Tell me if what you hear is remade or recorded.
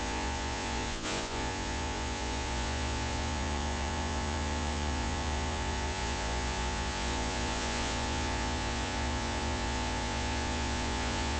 remade